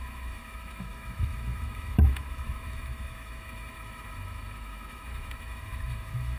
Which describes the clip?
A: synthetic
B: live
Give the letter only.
A